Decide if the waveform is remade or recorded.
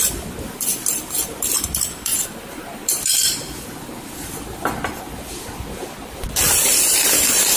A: remade